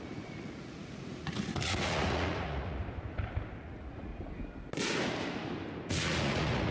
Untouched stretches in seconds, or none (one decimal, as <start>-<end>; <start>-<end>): 2.8-3.6; 4.1-5.9